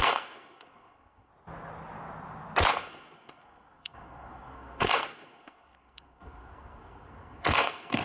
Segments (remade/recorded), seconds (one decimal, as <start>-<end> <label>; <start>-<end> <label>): 0.0-1.3 remade; 1.3-2.7 recorded; 2.7-8.0 remade